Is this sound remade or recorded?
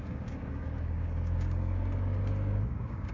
remade